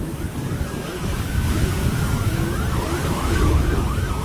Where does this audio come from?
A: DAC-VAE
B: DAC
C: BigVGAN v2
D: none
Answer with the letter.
B